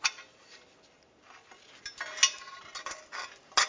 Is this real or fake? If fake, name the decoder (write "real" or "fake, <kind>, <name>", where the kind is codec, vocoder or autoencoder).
real